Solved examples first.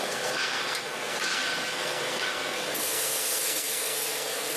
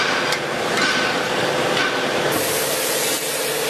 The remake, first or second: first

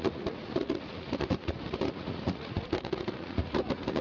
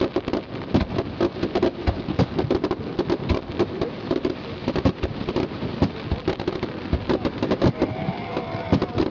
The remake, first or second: first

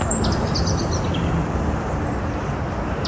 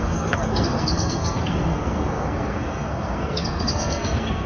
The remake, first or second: second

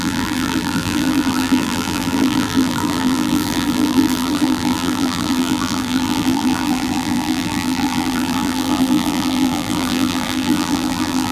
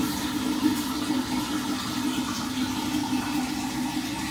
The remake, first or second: first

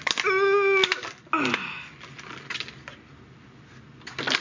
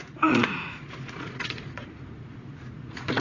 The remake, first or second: second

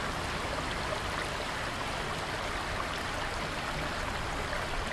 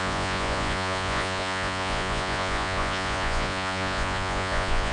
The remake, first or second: second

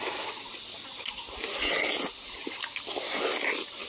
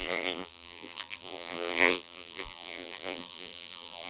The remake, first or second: second